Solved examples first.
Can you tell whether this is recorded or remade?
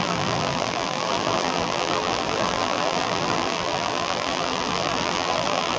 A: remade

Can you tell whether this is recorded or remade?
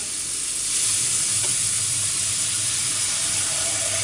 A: recorded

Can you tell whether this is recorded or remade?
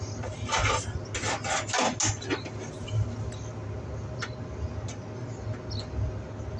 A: recorded